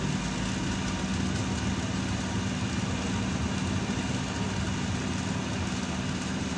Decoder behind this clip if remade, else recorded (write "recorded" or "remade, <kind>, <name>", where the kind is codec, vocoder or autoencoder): recorded